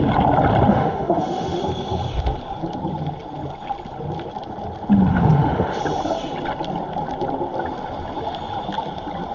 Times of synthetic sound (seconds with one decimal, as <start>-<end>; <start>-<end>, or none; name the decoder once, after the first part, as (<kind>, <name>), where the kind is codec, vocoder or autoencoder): 0.7-1.6 (autoencoder, DAC-VAE); 5.1-5.8